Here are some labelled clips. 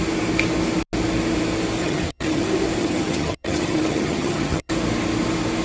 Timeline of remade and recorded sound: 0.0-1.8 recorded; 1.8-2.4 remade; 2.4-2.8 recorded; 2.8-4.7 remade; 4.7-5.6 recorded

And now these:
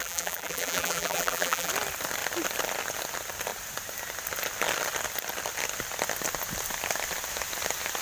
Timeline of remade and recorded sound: 0.0-1.7 remade; 1.7-8.0 recorded

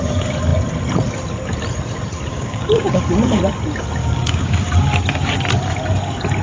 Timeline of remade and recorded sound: 0.0-2.3 recorded; 2.3-3.0 remade; 3.0-4.0 recorded; 4.0-4.7 remade; 4.7-6.4 recorded

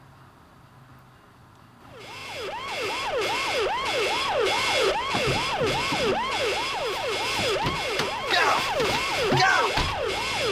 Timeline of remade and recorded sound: 0.0-10.5 recorded

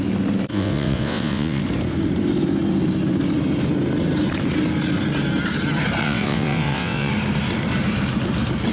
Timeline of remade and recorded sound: 0.0-0.5 recorded; 0.5-1.6 remade; 1.6-6.0 recorded; 6.0-7.1 remade; 7.1-8.7 recorded

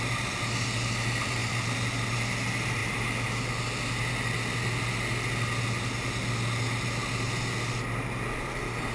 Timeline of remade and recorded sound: 0.0-8.9 recorded